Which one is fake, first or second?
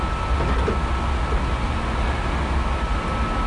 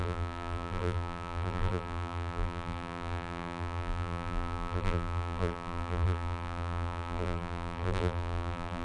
second